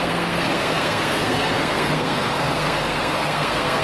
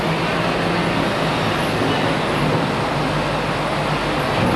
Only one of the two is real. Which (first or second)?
second